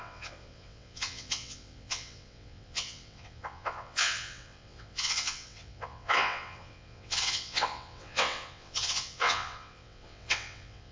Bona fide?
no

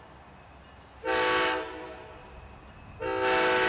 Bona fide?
yes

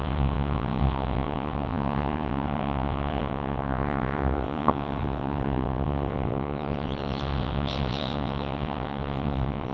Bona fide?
no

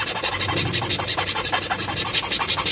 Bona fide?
yes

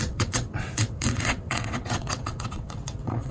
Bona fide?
no